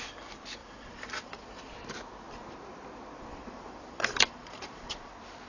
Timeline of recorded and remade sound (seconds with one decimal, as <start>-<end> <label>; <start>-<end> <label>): 0.0-0.6 recorded; 0.6-1.6 remade; 1.6-3.3 recorded; 3.3-5.1 remade; 5.1-5.5 recorded